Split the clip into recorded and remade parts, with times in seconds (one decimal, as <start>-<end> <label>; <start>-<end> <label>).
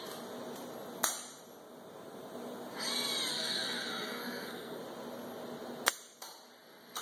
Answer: 0.0-3.3 recorded; 3.3-4.8 remade; 4.8-7.0 recorded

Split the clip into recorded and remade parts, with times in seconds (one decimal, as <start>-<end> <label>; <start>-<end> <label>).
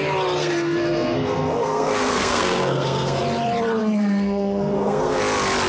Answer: 0.0-0.4 recorded; 0.4-3.2 remade; 3.2-3.8 recorded; 3.8-5.2 remade; 5.2-5.7 recorded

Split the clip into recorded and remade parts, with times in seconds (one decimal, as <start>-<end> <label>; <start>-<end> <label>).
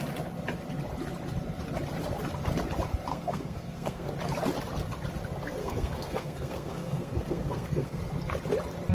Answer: 0.0-3.1 recorded; 3.1-4.1 remade; 4.1-5.6 recorded; 5.6-8.0 remade; 8.0-8.9 recorded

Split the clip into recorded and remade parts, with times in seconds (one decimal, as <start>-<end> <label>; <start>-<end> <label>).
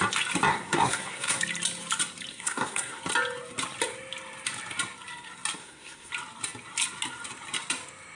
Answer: 0.0-0.5 recorded; 0.5-1.4 remade; 1.4-2.3 recorded; 2.3-3.0 remade; 3.0-5.6 recorded; 5.6-6.1 remade; 6.1-8.1 recorded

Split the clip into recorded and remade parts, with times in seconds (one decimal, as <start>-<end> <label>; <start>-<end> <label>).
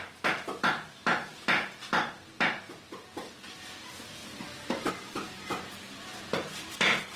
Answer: 0.0-7.2 recorded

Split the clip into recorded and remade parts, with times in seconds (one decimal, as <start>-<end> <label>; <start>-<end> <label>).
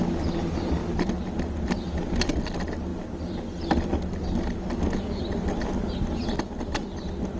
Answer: 0.0-7.4 recorded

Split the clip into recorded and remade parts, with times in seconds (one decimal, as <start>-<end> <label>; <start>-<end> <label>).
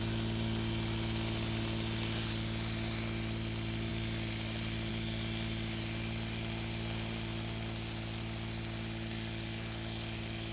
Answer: 0.0-10.5 recorded